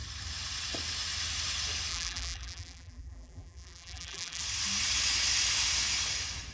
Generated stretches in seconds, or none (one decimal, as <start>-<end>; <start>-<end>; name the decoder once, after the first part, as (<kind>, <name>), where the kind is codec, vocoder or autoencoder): 1.9-4.4 (vocoder, BigVGAN v2)